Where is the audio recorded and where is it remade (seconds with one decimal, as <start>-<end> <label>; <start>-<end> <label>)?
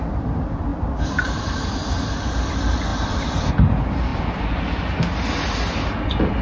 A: 0.0-6.4 recorded